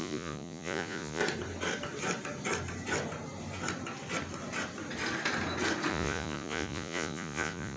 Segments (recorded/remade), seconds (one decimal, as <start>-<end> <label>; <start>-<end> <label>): 0.0-1.2 remade; 1.2-5.9 recorded; 5.9-7.8 remade